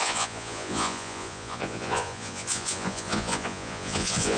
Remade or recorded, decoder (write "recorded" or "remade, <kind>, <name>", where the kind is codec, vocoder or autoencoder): remade, vocoder, Vocos